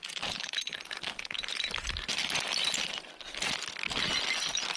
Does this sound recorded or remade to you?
recorded